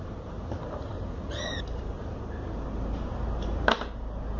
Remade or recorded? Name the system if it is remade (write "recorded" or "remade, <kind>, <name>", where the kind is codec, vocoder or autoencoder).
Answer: remade, vocoder, BigVGAN v2